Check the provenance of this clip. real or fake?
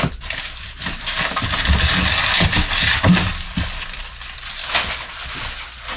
real